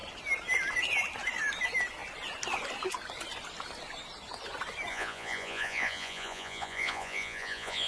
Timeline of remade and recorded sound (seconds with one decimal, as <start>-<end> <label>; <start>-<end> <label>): 0.0-4.9 recorded; 4.9-7.9 remade